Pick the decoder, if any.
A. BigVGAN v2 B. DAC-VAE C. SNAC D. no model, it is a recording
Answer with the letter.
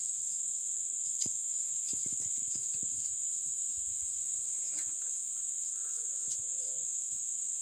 B